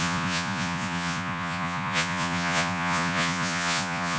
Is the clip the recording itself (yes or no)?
no